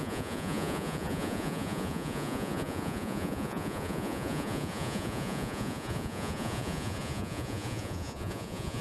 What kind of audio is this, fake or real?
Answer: fake